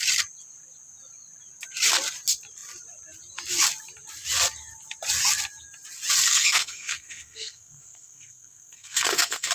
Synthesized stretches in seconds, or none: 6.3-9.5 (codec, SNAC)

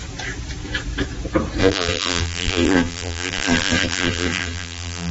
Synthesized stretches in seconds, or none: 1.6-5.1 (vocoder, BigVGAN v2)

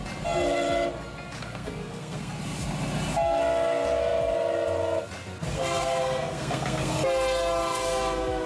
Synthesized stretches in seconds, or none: 1.4-2.3 (codec, SNAC); 5.4-6.9

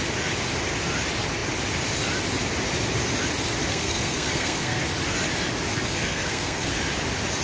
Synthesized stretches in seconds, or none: 3.7-4.8 (codec, SNAC); 5.7-6.7

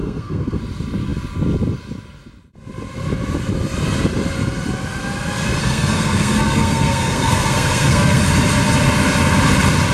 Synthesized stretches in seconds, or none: 0.0-0.6 (codec, SNAC); 5.6-8.2

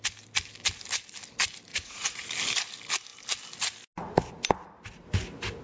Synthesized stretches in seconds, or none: 1.7-2.3 (vocoder, Vocos)